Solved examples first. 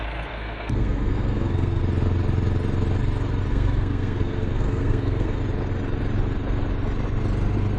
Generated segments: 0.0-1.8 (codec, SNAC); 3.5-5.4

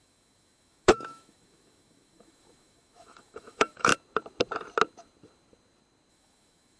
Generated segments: 0.0-3.9 (autoencoder, DAC-VAE); 6.1-6.8

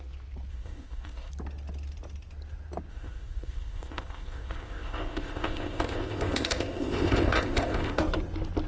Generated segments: 0.5-1.3 (codec, ZipCodec); 2.9-8.0

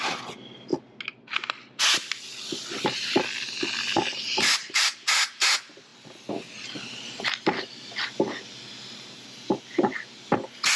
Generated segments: none

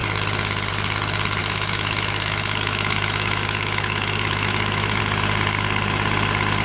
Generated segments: 1.4-5.0 (autoencoder, DAC-VAE)